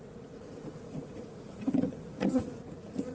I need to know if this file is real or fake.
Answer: fake